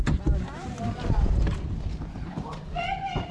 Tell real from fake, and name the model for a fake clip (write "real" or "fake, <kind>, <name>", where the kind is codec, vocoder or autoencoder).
real